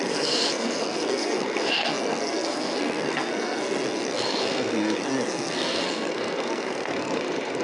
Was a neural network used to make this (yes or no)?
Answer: yes